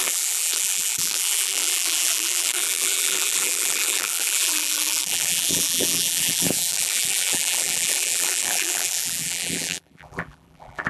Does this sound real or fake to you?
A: fake